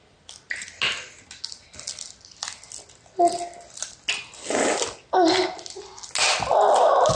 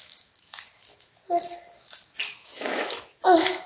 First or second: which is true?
first